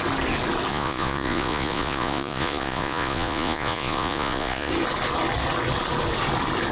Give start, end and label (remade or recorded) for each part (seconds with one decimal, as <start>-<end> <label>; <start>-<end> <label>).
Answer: 0.0-0.7 recorded; 0.7-4.7 remade; 4.7-6.7 recorded